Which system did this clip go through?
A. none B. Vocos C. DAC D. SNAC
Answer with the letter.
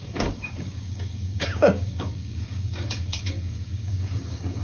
C